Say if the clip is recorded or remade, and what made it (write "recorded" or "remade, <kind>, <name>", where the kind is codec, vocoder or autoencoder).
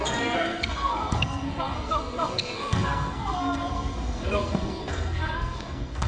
remade, codec, SNAC